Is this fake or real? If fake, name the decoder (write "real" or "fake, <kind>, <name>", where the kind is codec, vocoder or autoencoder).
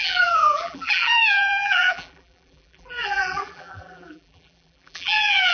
fake, vocoder, BigVGAN v2